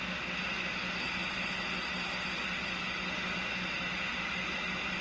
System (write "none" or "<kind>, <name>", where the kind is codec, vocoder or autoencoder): none